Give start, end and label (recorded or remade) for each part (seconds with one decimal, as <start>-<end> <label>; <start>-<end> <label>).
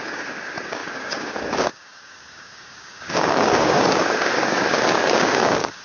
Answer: 0.0-5.8 remade